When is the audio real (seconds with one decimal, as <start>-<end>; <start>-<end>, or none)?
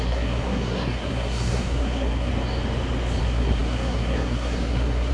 2.3-3.2